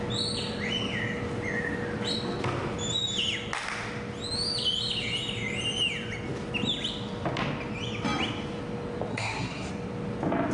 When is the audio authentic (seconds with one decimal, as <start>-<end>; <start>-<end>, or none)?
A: 0.0-9.1; 9.7-10.5